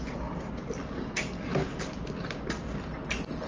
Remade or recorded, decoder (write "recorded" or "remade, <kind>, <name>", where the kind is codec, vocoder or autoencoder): recorded